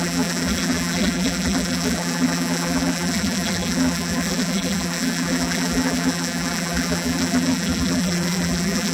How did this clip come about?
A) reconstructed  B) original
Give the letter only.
A